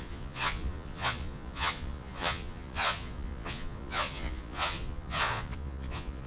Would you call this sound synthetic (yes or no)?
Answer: yes